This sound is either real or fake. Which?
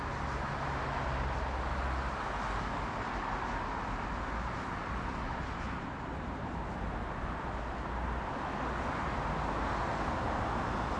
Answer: real